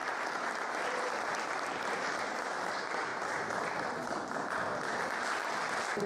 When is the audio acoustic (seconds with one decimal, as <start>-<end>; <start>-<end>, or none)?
0.0-1.8; 3.1-4.3; 5.4-6.1